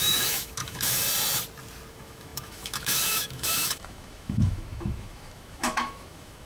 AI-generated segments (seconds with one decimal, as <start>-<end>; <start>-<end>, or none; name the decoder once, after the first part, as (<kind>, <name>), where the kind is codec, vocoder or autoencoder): 0.0-1.0 (autoencoder, DAC-VAE); 1.9-6.5